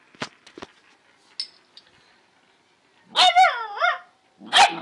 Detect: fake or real real